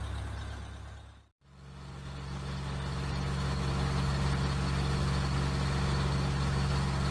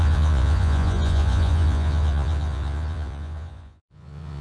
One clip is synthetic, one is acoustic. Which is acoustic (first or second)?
first